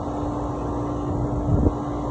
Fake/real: real